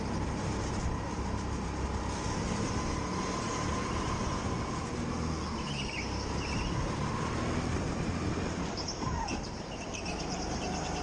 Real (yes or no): yes